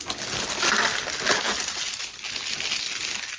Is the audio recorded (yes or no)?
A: yes